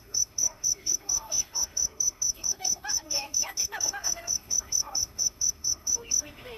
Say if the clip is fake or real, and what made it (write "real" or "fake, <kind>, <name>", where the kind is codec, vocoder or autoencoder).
fake, autoencoder, DAC-VAE